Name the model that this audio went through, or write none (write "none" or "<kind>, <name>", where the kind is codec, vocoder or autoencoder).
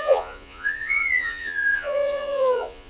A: vocoder, Vocos